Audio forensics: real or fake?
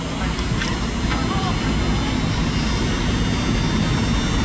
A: real